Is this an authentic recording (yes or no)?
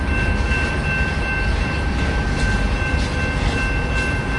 yes